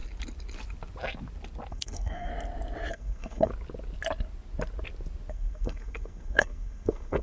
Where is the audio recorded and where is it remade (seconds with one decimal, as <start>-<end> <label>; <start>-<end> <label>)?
0.0-1.7 recorded; 1.7-2.3 remade; 2.3-2.9 recorded; 2.9-3.5 remade; 3.5-5.3 recorded; 5.3-7.2 remade